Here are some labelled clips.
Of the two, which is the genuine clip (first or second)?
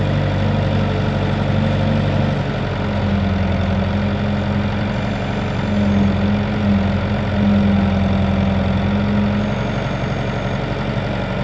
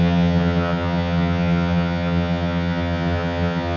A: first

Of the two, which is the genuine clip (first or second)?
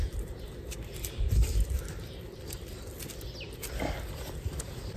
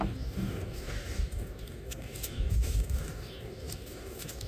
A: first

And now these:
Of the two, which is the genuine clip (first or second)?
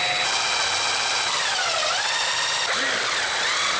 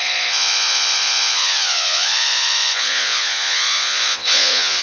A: first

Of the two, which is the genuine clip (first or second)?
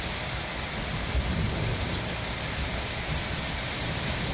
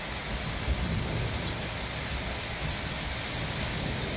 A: second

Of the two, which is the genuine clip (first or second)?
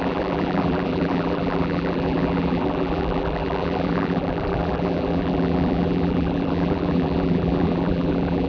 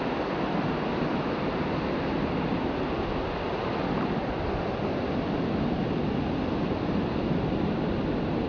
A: second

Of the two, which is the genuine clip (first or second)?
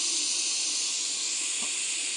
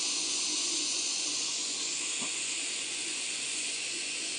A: first